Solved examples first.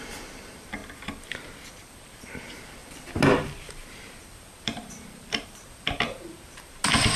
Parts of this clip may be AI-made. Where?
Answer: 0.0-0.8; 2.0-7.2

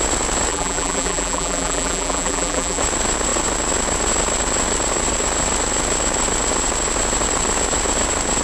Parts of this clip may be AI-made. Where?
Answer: 0.5-2.8

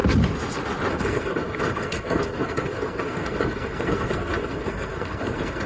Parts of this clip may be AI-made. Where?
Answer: 0.9-5.7

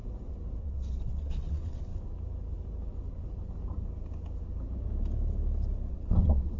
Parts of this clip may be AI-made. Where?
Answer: 0.6-1.9; 5.9-6.6